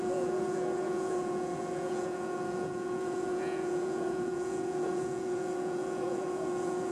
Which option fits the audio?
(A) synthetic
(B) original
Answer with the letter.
A